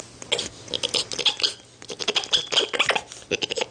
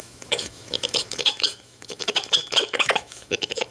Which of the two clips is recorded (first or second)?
first